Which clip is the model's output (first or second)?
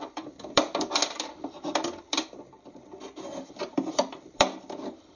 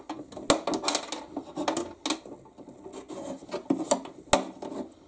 first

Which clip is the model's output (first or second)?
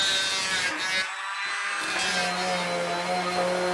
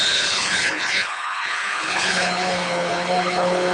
second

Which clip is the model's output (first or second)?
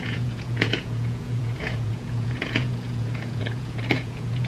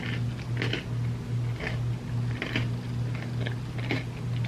first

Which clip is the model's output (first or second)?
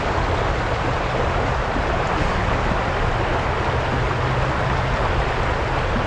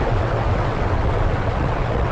second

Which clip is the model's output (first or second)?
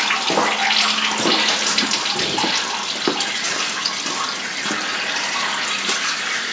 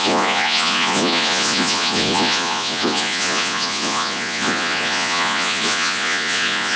second